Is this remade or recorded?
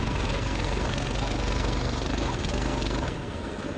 remade